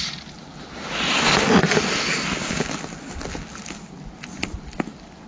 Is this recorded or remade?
recorded